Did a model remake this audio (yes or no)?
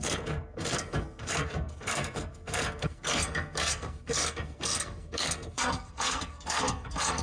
yes